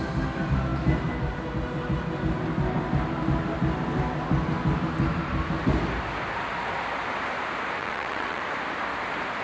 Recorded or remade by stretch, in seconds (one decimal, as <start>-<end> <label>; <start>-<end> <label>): 0.0-7.8 recorded; 7.8-8.4 remade; 8.4-9.4 recorded